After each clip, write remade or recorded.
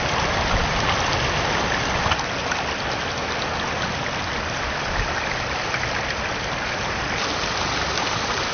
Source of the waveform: recorded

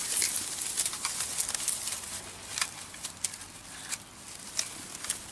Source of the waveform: recorded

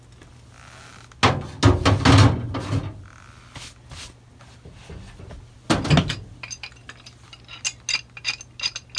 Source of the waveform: recorded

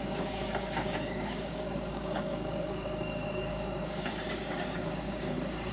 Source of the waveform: remade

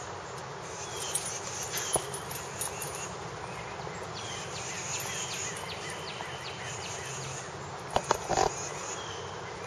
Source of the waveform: recorded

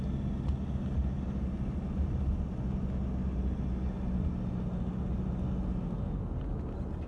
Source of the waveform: recorded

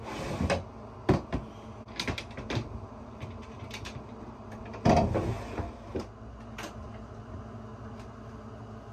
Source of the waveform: recorded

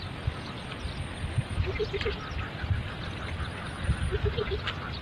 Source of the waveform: recorded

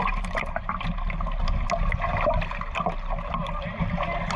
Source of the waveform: recorded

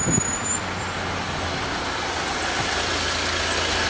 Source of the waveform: recorded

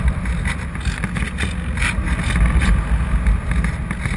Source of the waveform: recorded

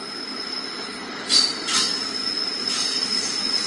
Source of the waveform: recorded